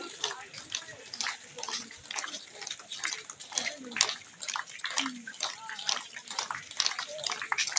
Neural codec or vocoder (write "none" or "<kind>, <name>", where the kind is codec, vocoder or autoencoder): none